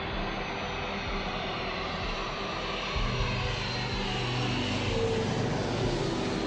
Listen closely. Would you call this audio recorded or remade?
recorded